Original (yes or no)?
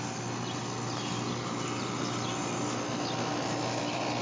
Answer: yes